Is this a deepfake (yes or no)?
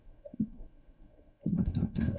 yes